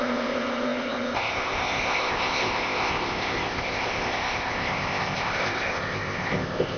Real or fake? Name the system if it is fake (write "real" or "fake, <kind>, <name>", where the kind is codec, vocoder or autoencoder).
fake, codec, ZipCodec